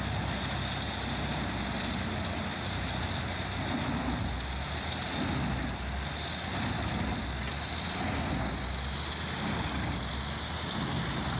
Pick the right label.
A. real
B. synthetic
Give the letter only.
A